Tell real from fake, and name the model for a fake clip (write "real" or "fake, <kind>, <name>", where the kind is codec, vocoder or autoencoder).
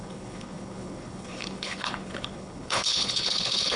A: fake, codec, HILCodec